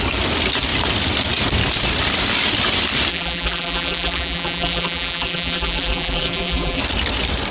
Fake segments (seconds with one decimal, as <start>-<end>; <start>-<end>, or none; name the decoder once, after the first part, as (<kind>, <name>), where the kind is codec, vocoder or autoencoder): 3.1-6.8 (vocoder, BigVGAN v2)